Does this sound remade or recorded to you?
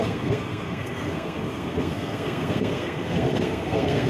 remade